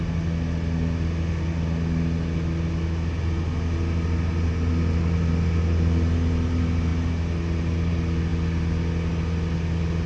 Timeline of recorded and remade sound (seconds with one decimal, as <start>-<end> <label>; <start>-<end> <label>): 0.0-10.1 recorded

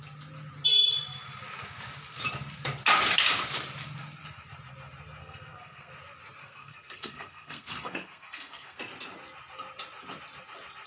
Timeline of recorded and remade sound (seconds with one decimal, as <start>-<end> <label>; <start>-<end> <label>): 0.0-5.2 recorded; 5.2-5.9 remade; 5.9-6.4 recorded; 6.4-8.8 remade; 8.8-10.9 recorded

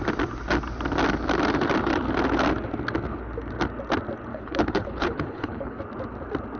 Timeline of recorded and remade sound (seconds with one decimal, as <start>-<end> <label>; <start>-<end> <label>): 0.0-4.3 recorded; 4.3-5.8 remade; 5.8-6.6 recorded

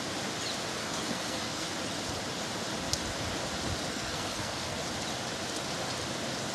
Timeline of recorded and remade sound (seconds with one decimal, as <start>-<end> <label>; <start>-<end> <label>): 0.0-0.8 recorded; 0.8-1.7 remade; 1.7-3.9 recorded; 3.9-4.8 remade; 4.8-6.5 recorded

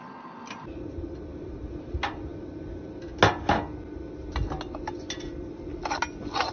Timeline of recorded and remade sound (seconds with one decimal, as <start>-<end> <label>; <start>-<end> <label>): 0.0-6.5 recorded